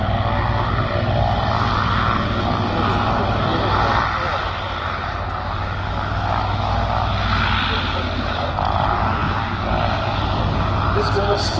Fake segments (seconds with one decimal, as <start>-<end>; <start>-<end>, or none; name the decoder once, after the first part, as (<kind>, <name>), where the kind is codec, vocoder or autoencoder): none